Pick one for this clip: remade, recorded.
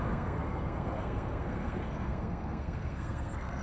remade